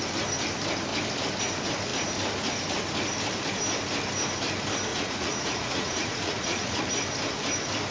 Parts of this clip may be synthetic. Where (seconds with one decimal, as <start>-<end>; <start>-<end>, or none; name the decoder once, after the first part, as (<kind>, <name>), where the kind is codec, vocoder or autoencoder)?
4.9-6.9 (vocoder, Vocos)